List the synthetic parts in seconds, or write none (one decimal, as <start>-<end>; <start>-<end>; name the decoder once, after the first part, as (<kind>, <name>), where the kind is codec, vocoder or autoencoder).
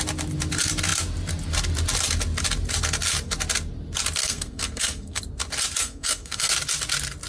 4.2-5.2 (codec, SNAC); 5.8-6.5